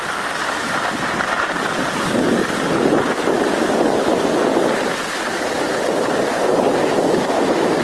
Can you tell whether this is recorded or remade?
recorded